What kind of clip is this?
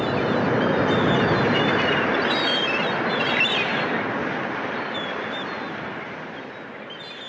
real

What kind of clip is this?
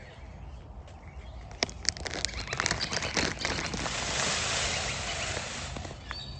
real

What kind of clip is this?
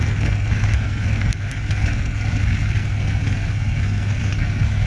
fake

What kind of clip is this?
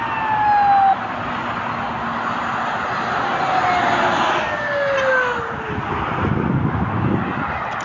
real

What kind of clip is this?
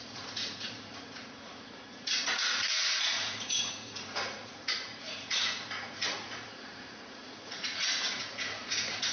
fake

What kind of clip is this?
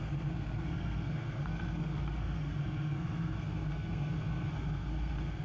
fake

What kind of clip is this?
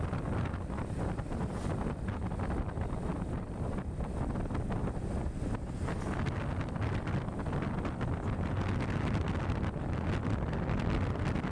real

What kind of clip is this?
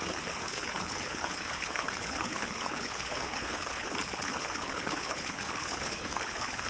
fake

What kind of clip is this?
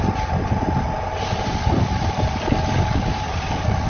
real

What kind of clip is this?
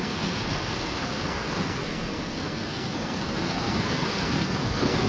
fake